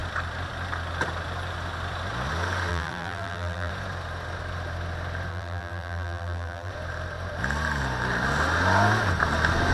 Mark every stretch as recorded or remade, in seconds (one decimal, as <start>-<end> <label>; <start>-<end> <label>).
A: 0.0-2.7 recorded; 2.7-3.7 remade; 3.7-5.3 recorded; 5.3-6.7 remade; 6.7-9.7 recorded

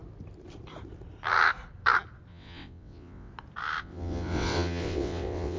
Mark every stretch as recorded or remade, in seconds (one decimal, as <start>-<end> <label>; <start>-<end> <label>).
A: 0.0-2.3 recorded; 2.3-3.3 remade; 3.3-3.8 recorded; 3.8-5.6 remade

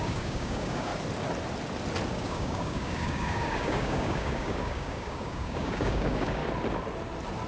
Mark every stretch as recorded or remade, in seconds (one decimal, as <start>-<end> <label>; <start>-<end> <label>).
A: 0.0-0.9 remade; 0.9-2.1 recorded; 2.1-6.4 remade; 6.4-7.5 recorded

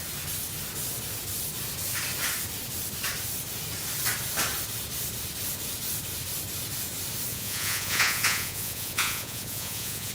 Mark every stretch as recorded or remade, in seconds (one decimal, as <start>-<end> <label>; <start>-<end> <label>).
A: 0.0-7.3 recorded; 7.3-10.1 remade

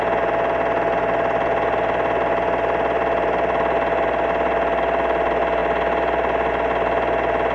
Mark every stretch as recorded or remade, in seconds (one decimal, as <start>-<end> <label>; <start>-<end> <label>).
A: 0.0-7.5 recorded